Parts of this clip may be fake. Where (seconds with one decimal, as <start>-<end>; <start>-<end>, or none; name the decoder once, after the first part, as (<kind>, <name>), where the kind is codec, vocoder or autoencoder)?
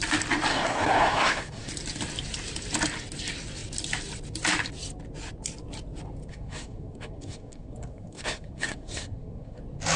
0.5-1.7 (codec, SNAC); 6.3-9.6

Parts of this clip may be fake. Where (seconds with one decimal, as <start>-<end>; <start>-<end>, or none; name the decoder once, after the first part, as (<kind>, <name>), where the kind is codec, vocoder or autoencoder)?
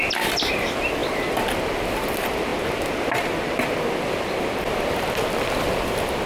none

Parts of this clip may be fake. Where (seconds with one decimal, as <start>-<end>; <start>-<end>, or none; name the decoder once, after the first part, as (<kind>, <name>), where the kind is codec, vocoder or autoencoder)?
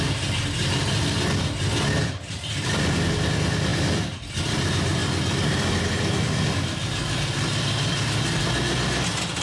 none